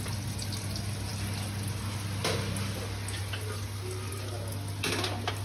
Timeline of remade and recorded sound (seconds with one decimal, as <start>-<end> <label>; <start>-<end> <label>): 0.0-5.4 recorded

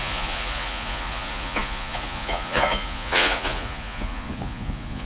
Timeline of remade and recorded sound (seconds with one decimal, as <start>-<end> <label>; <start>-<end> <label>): 0.0-5.1 remade

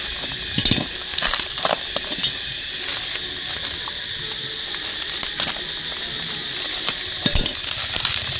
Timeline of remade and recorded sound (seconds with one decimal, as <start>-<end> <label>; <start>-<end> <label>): 0.0-0.6 recorded; 0.6-2.5 remade; 2.5-8.4 recorded